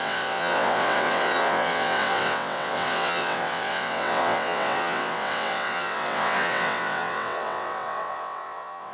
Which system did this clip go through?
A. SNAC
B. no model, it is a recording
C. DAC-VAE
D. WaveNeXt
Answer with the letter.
D